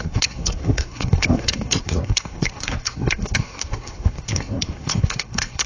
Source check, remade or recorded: remade